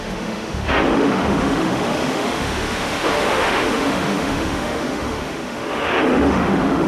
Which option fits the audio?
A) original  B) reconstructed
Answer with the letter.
B